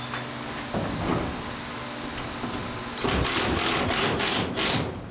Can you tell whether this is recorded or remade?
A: recorded